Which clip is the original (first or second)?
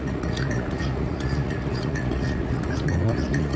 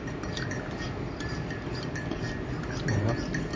second